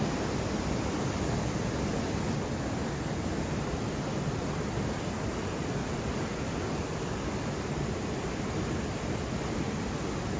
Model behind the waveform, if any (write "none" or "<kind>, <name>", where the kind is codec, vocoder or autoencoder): none